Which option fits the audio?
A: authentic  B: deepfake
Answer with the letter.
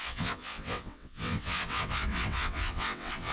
B